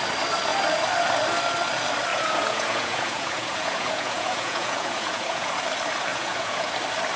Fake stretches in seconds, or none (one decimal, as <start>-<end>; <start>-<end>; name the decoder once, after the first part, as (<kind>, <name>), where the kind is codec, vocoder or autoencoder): 2.1-5.6 (vocoder, Vocos); 6.1-6.7